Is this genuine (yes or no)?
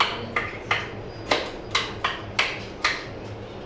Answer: yes